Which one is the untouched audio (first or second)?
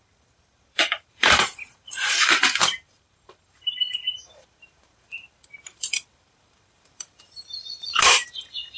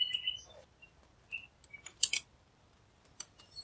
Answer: second